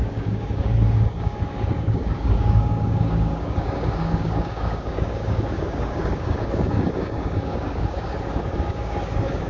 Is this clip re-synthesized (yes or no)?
yes